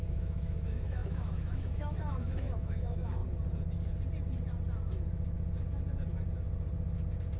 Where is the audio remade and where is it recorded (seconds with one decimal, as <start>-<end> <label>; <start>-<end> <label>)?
0.0-3.2 remade; 3.2-7.4 recorded